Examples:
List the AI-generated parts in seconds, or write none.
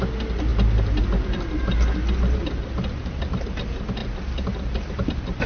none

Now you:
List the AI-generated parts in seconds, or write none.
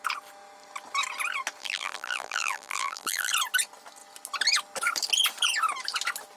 1.6-3.3